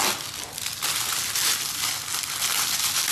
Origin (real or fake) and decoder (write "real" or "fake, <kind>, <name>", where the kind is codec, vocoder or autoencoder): real